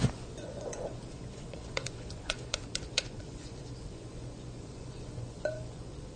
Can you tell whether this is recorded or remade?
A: remade